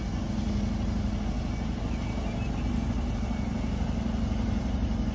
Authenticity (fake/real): real